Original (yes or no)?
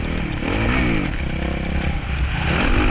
yes